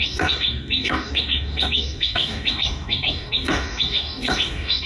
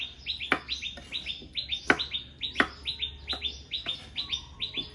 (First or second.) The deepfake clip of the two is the first